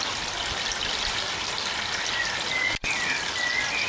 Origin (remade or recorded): recorded